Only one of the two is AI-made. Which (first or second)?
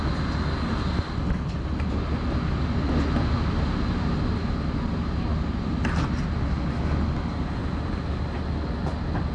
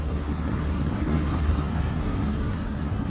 second